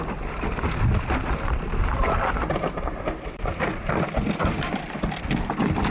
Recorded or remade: recorded